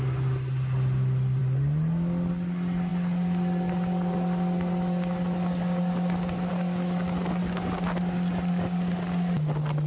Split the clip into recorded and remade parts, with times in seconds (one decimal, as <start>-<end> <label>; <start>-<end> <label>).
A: 0.0-9.9 recorded